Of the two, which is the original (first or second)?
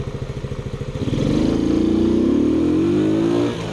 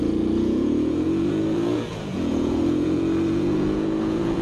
first